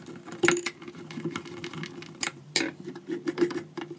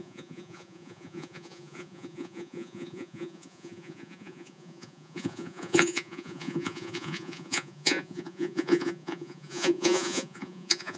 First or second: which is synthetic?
second